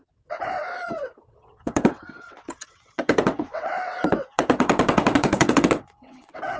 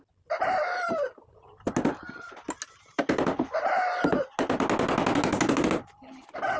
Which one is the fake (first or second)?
first